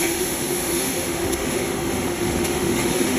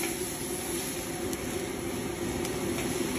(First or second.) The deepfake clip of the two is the first